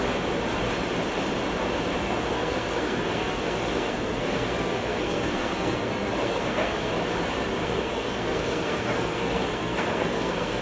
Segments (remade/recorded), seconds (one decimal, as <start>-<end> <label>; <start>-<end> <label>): 0.0-2.0 recorded; 2.0-6.9 remade; 6.9-7.6 recorded; 7.6-10.6 remade

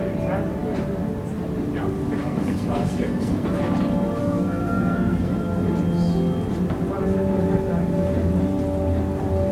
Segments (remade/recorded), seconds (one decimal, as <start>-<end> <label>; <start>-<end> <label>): 0.0-2.2 recorded; 2.2-3.6 remade; 3.6-4.2 recorded; 4.2-5.3 remade; 5.3-9.5 recorded

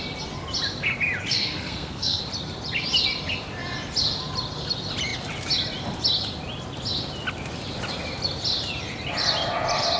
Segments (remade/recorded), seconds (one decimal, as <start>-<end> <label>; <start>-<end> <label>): 0.0-1.3 recorded; 1.3-2.2 remade; 2.2-10.0 recorded

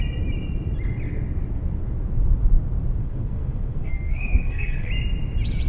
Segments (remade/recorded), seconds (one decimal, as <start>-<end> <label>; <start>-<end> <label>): 0.0-3.0 recorded; 3.0-4.9 remade; 4.9-5.7 recorded

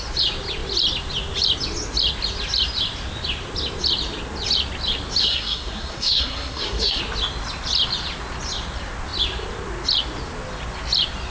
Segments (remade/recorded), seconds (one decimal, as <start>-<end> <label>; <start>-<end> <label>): 0.0-5.2 recorded; 5.2-7.0 remade; 7.0-11.3 recorded